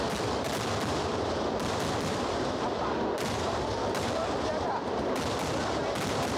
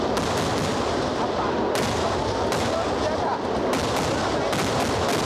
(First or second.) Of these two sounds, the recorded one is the second